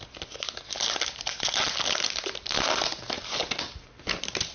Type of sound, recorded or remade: recorded